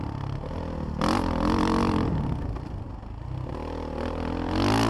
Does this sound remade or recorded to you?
recorded